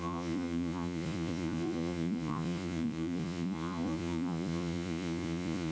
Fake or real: fake